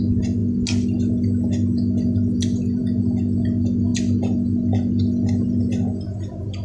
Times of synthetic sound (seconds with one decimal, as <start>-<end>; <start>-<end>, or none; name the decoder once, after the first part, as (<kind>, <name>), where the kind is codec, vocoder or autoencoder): none